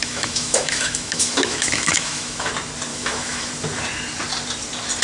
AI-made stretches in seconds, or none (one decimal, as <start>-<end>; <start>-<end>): 0.0-2.5; 2.9-3.5